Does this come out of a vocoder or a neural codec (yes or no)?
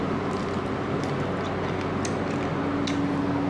no